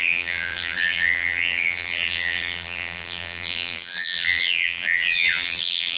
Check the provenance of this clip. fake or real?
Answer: fake